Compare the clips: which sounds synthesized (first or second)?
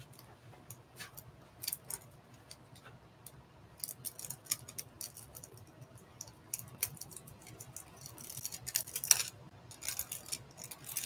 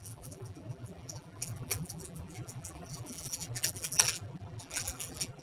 second